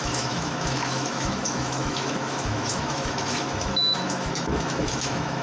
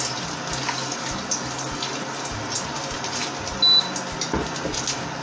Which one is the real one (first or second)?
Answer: second